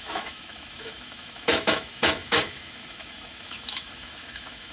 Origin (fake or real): fake